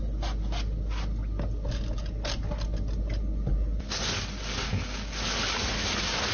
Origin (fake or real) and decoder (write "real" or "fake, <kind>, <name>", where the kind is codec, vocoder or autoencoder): real